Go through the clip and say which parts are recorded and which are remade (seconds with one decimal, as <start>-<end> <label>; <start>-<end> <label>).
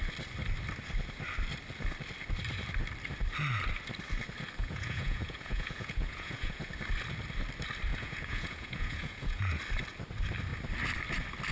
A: 0.0-4.6 recorded; 4.6-6.7 remade; 6.7-7.9 recorded; 7.9-9.6 remade; 9.6-11.5 recorded